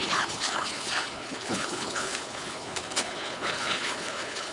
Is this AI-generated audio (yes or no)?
yes